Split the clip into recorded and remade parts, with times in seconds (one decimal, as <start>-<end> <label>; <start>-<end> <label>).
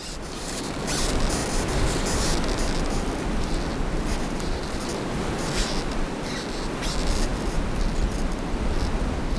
0.0-9.4 recorded